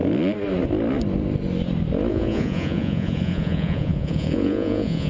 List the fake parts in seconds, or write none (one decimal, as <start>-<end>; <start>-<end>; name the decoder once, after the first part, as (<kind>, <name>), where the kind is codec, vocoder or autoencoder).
2.1-5.1 (vocoder, Vocos)